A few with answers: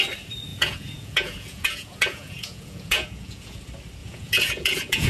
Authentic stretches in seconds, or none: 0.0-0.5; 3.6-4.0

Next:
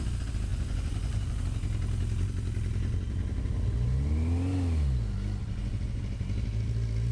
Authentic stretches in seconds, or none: 0.0-0.5; 1.4-5.4; 6.0-7.1

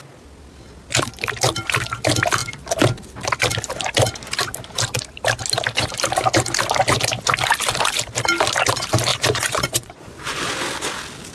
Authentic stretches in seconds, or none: 0.0-9.1; 10.5-11.3

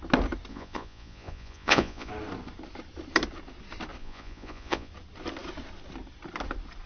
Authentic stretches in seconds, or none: 0.0-0.5; 2.1-4.0; 4.9-6.9

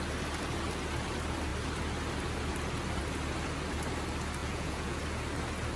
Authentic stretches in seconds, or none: 0.0-4.4; 5.0-5.8

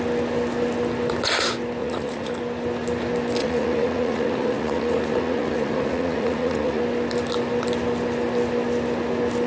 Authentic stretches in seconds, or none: 0.0-1.8; 2.3-3.4; 6.8-9.5

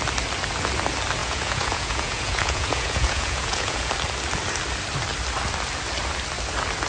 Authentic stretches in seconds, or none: 0.0-1.2; 3.9-6.9

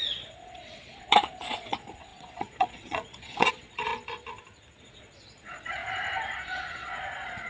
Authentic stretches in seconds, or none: 3.9-4.8; 5.8-6.4